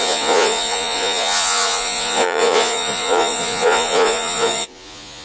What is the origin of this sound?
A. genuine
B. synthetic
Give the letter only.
B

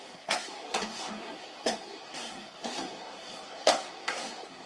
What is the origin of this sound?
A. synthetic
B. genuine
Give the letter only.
A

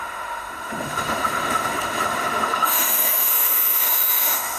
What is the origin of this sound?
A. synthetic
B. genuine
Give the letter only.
A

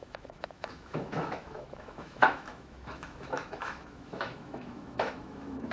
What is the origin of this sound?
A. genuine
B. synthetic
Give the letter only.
B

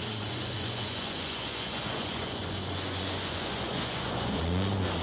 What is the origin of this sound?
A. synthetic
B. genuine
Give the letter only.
A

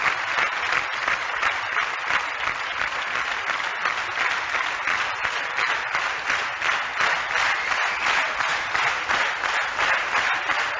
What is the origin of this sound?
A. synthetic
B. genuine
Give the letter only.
B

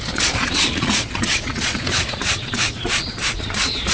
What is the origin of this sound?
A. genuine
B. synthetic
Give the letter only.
B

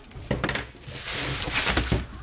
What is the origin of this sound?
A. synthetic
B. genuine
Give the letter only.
B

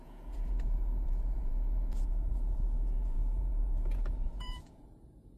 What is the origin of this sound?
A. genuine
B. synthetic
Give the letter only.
B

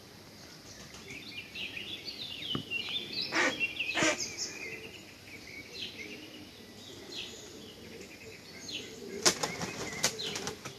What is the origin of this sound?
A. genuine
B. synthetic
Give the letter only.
A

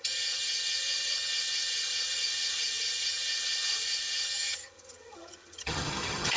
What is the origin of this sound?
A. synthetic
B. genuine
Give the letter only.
A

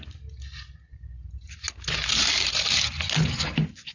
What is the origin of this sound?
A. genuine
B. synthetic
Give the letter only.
A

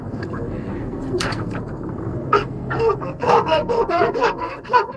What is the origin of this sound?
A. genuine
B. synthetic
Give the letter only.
B